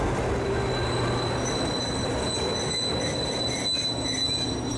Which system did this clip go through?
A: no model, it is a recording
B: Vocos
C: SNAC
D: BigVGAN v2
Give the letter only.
A